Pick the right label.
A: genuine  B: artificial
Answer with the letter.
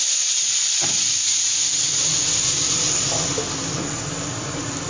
A